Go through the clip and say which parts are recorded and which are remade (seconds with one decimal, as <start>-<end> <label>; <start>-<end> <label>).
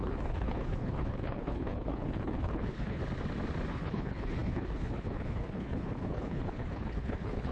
0.0-3.0 remade; 3.0-3.7 recorded; 3.7-7.5 remade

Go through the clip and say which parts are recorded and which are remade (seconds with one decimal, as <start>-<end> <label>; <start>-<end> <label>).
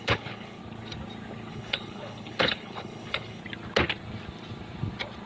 0.0-0.6 remade; 0.6-1.5 recorded; 1.5-3.4 remade; 3.4-5.3 recorded